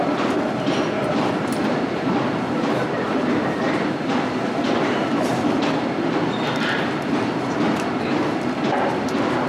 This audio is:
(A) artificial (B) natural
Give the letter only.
A